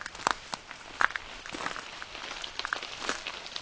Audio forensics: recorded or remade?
recorded